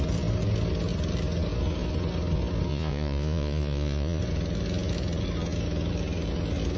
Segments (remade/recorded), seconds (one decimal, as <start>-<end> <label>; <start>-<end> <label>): 0.0-2.7 recorded; 2.7-4.2 remade; 4.2-6.8 recorded